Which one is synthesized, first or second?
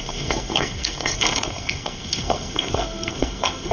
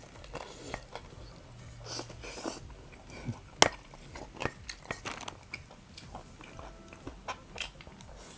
first